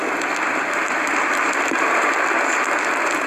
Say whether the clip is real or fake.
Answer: fake